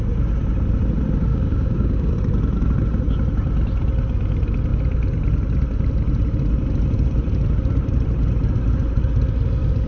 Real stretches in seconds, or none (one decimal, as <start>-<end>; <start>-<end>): 0.0-1.3; 2.2-9.9